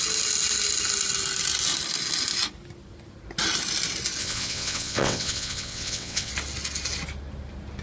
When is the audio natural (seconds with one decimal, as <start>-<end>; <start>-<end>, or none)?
0.0-4.2; 6.3-7.8